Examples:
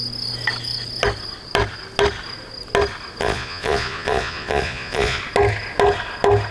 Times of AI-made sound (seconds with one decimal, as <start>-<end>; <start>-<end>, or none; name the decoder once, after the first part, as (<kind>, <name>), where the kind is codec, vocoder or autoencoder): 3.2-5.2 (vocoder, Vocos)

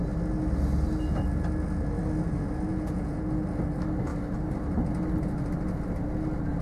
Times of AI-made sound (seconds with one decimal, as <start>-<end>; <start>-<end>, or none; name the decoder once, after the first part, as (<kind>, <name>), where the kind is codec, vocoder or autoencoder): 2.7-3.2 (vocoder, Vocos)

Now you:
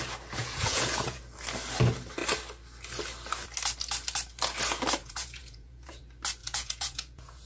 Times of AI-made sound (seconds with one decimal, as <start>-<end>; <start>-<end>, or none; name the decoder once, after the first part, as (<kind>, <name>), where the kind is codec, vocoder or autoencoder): 0.4-1.2 (vocoder, Vocos); 5.0-6.0; 6.4-7.5

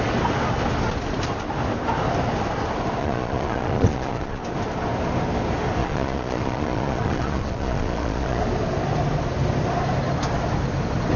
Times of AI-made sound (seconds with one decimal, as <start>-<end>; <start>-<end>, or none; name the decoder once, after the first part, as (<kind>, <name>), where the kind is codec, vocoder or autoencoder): 3.0-4.4 (vocoder, Vocos); 5.8-8.4

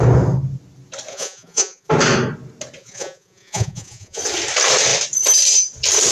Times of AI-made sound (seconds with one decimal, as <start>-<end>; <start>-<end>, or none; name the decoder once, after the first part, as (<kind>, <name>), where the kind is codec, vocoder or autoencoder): 1.1-1.9 (vocoder, Vocos); 2.8-4.2

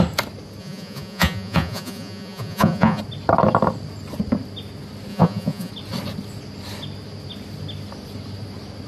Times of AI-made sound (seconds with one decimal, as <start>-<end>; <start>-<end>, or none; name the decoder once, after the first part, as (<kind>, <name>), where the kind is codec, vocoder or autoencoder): 0.6-3.0 (vocoder, Vocos); 5.1-5.7

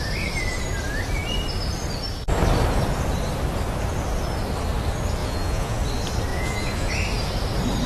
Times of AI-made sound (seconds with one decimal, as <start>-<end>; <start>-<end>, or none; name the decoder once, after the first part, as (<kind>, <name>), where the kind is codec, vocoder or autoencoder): 5.2-5.8 (vocoder, Vocos); 6.3-6.9